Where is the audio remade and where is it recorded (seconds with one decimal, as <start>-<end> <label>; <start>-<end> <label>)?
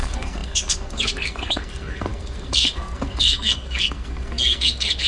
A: 0.0-5.1 remade